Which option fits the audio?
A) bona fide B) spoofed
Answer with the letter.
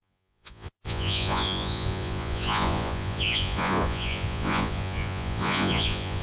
B